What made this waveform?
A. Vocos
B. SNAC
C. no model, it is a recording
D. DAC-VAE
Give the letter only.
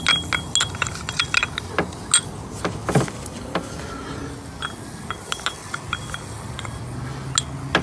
C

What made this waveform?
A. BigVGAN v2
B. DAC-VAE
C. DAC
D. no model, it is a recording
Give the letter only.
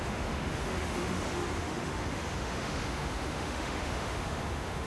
B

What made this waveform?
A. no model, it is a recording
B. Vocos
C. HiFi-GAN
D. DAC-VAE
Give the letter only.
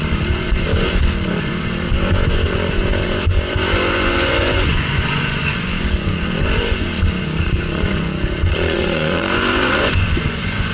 B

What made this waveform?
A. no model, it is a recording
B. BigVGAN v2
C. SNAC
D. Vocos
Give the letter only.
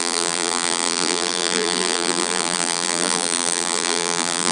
B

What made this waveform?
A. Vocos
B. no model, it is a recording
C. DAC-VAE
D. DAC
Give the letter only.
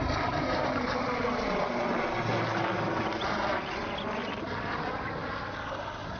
B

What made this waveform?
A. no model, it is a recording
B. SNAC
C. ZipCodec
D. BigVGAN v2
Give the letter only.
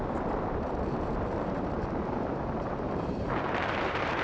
D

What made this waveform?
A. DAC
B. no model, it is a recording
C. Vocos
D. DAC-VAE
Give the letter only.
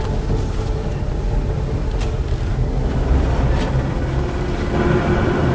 B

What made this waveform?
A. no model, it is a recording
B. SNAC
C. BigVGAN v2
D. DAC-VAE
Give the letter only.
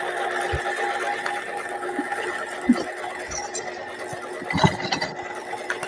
A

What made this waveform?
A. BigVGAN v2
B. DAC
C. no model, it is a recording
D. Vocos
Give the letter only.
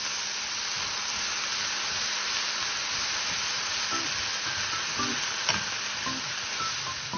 C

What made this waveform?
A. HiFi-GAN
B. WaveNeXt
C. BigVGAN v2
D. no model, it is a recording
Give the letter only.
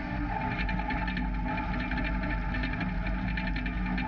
D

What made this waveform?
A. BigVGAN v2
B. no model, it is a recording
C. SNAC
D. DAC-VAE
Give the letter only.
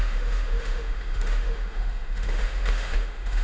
D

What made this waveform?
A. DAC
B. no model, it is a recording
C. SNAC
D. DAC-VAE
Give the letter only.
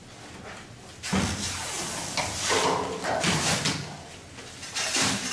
B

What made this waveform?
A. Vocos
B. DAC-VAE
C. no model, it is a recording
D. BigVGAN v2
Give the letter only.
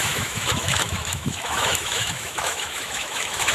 B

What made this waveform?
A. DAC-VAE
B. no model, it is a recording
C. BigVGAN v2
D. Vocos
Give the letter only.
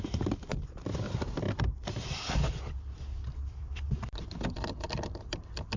C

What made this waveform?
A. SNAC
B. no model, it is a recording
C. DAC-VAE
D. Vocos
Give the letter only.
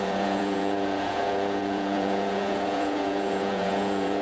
D